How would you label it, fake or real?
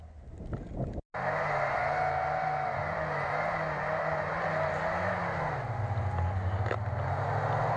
real